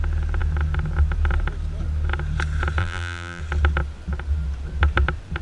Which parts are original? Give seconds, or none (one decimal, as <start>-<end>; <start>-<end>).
0.0-2.8; 3.4-5.4